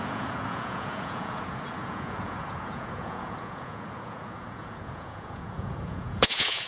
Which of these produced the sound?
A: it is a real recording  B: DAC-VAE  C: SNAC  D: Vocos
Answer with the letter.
D